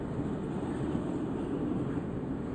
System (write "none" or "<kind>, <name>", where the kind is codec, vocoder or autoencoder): none